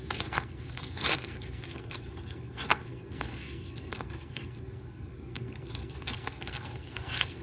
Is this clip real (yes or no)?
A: no